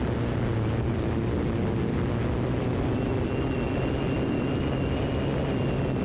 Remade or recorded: recorded